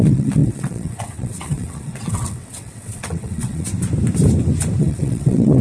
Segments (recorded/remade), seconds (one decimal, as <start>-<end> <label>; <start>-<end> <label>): 0.0-3.7 remade; 3.7-4.8 recorded; 4.8-5.6 remade